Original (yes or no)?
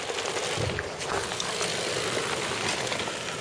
yes